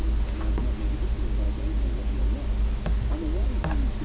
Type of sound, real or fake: real